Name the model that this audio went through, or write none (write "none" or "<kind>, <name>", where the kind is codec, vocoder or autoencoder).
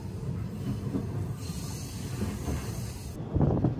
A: none